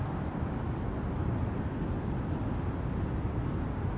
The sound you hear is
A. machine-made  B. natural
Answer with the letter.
B